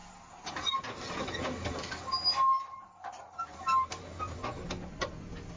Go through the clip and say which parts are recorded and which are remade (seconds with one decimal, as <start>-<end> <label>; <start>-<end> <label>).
0.0-5.6 recorded